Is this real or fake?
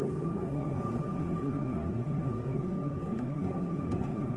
fake